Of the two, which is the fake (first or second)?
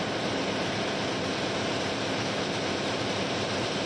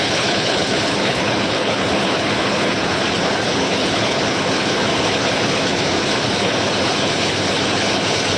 second